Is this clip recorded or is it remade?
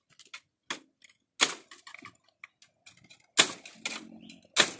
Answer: recorded